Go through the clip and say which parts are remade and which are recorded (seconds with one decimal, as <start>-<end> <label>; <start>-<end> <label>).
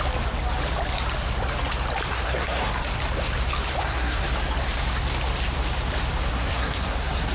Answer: 0.0-2.1 recorded; 2.1-2.7 remade; 2.7-3.8 recorded; 3.8-4.3 remade; 4.3-6.3 recorded; 6.3-7.3 remade